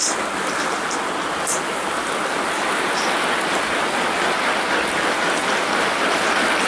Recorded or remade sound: recorded